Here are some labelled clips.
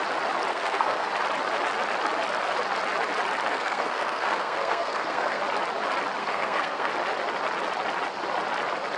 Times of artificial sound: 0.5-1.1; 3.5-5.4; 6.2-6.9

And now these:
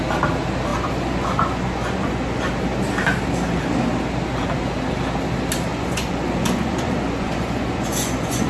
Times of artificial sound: 0.7-2.5; 5.7-8.5

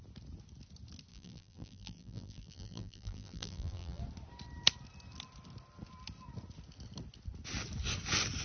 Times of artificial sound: 1.1-4.0

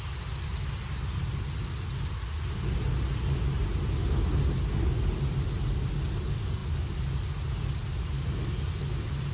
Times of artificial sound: none

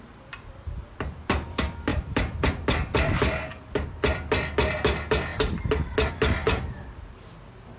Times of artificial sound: 0.0-5.3; 6.1-7.8

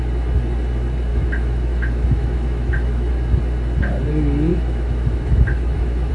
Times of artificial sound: 1.1-3.1; 4.5-6.1

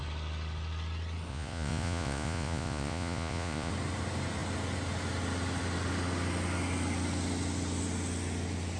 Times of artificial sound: 1.3-3.7